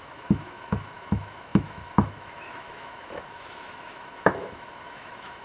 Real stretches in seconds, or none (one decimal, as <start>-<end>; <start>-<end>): none